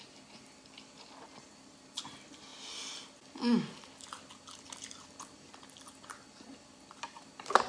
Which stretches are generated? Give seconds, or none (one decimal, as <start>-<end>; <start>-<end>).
none